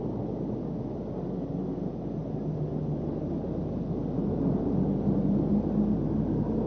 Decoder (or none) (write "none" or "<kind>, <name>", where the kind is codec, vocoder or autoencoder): none